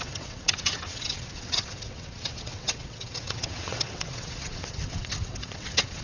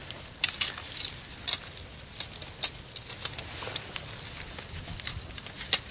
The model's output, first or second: first